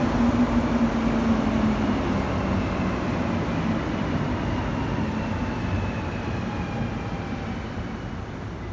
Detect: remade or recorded recorded